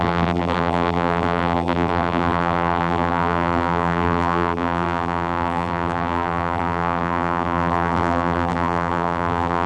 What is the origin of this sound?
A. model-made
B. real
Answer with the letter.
A